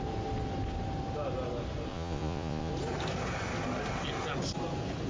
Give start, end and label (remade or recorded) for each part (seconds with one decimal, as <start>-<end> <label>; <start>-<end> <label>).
0.0-1.9 recorded; 1.9-2.7 remade; 2.7-5.1 recorded